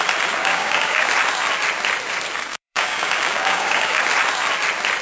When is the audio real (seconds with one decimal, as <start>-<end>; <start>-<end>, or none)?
0.0-0.4; 1.1-2.5; 4.0-5.0